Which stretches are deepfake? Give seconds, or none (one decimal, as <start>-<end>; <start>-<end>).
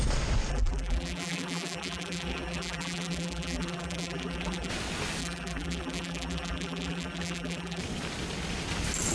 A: 0.5-4.7; 5.2-7.8